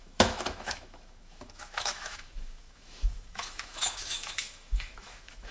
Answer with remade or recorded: remade